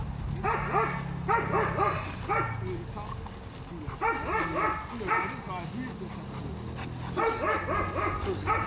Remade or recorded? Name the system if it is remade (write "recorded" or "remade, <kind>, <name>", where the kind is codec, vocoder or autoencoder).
recorded